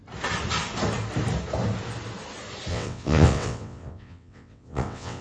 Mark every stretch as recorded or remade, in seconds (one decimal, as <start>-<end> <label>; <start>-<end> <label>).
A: 0.0-2.7 recorded; 2.7-5.2 remade